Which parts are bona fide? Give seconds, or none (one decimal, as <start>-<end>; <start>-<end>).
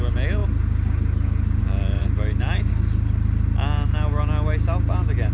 0.0-5.3